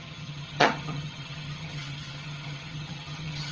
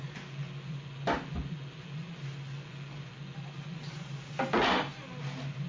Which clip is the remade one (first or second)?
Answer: first